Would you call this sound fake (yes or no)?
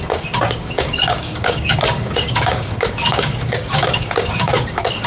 yes